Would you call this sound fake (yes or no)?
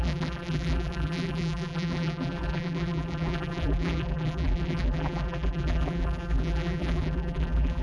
yes